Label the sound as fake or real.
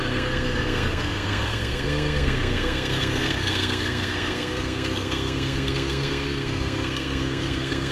fake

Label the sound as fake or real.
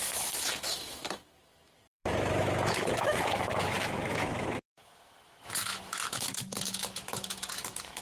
fake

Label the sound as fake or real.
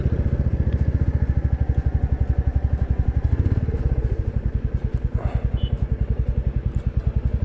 real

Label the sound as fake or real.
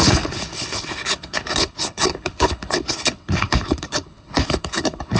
fake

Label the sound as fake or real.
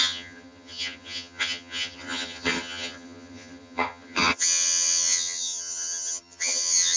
fake